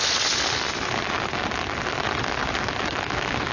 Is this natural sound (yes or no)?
yes